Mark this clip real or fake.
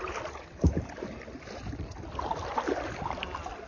real